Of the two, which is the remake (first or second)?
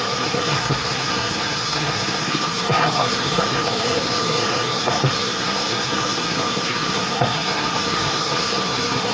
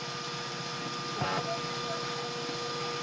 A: first